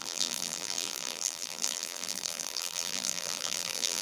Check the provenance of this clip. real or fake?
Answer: fake